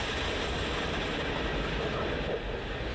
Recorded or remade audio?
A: recorded